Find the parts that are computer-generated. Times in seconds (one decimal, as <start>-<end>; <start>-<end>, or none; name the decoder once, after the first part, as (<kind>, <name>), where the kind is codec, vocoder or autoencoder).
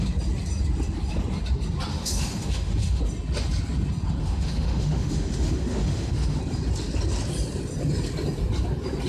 1.9-3.0 (autoencoder, DAC-VAE); 4.2-6.4